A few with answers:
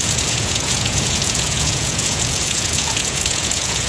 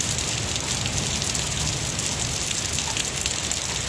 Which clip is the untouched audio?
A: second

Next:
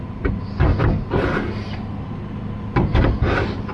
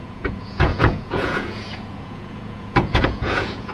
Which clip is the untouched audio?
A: first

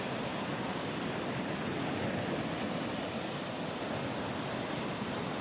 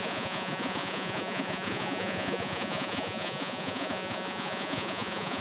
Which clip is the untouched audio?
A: first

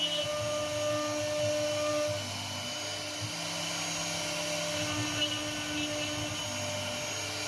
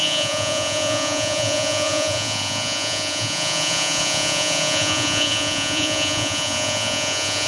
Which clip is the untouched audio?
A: first